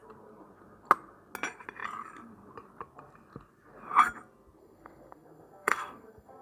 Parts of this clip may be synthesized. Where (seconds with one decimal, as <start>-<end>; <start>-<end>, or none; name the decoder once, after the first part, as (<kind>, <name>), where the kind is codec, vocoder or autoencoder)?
4.6-6.4 (codec, SNAC)